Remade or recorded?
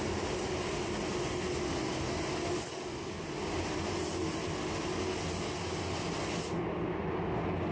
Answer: recorded